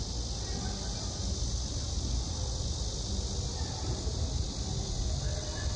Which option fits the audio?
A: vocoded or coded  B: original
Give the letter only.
B